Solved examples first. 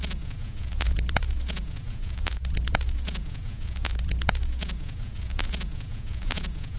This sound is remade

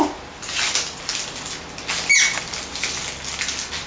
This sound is recorded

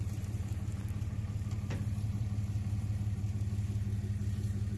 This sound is remade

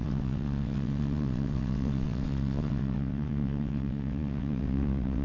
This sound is remade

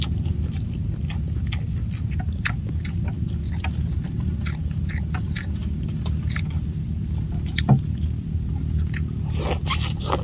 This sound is recorded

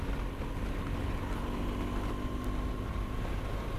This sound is recorded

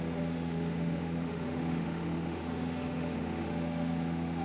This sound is remade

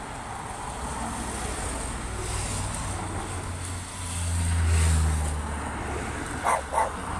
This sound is recorded